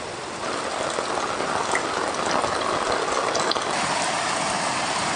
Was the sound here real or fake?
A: real